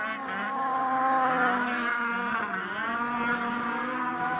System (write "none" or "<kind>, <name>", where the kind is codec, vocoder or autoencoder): none